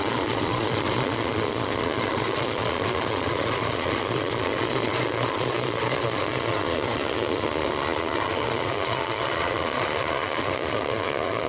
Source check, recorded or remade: remade